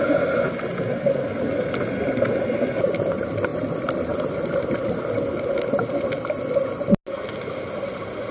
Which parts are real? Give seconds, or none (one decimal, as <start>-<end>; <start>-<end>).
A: 0.0-8.3

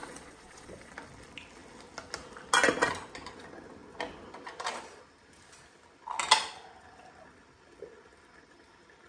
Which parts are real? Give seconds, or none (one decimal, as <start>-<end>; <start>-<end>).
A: 0.9-9.1

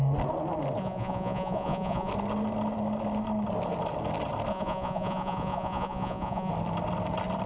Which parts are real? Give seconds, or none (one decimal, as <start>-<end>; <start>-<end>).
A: 0.0-0.8; 2.1-4.5; 6.5-7.5